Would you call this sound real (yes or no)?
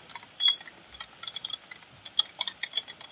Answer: yes